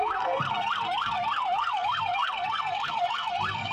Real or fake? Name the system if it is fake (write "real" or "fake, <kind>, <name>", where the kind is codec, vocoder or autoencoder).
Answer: fake, codec, SNAC